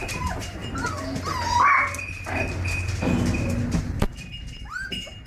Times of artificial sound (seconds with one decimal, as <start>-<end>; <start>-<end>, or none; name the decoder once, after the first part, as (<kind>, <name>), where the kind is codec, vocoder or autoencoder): 0.0-0.6 (vocoder, BigVGAN v2); 3.8-5.3